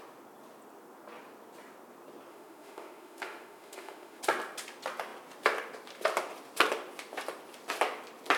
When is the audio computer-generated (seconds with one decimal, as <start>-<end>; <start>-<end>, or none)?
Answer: 2.3-4.2